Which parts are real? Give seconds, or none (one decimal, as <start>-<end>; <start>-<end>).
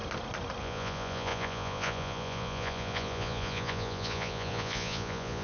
0.0-0.6